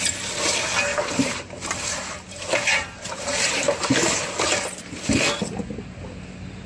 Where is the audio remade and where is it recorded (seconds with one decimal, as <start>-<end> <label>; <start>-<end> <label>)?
0.0-0.9 recorded; 0.9-4.9 remade; 4.9-6.7 recorded